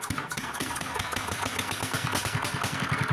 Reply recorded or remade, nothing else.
remade